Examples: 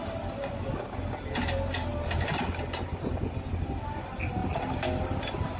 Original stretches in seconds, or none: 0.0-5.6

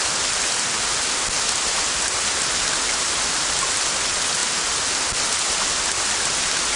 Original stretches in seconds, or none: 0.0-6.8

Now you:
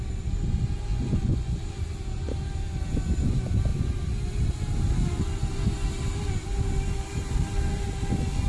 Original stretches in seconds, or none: 0.0-0.9; 1.6-8.5

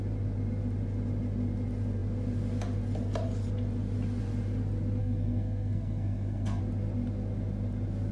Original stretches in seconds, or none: 0.0-5.0; 6.6-8.1